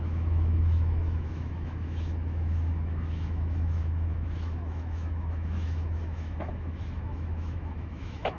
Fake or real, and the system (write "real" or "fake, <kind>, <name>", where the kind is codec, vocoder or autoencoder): fake, autoencoder, DAC-VAE